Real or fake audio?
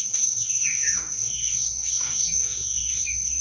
fake